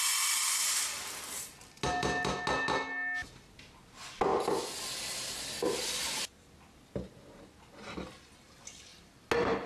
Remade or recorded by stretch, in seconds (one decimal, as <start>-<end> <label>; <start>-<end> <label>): 0.0-9.7 recorded